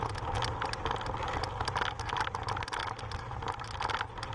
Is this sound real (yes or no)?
yes